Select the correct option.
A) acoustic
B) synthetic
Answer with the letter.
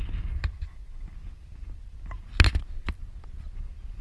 A